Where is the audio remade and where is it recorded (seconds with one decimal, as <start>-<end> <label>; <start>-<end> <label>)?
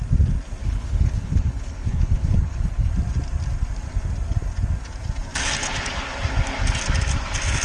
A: 0.0-0.6 recorded; 0.6-2.9 remade; 2.9-7.6 recorded